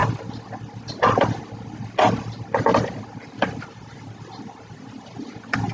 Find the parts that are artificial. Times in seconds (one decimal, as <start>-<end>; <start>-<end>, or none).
none